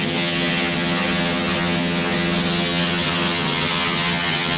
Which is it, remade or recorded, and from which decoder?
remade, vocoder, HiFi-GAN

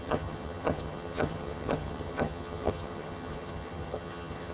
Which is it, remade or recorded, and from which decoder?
remade, vocoder, HiFi-GAN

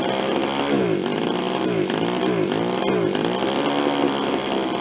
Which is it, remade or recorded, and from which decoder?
recorded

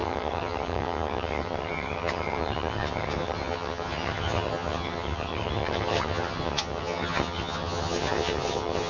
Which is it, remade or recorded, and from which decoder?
remade, vocoder, HiFi-GAN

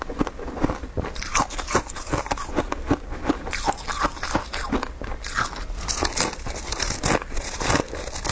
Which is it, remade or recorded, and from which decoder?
recorded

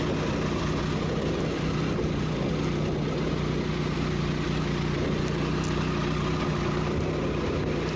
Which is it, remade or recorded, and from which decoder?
recorded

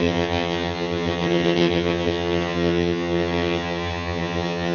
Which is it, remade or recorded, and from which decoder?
remade, vocoder, HiFi-GAN